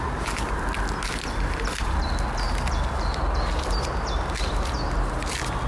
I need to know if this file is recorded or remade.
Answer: recorded